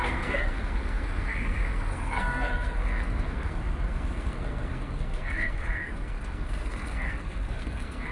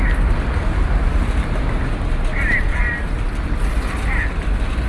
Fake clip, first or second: first